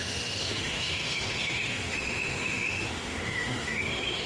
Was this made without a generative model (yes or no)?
no